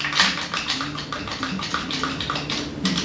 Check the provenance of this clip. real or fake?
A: real